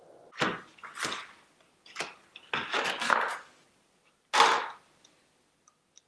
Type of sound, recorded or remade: recorded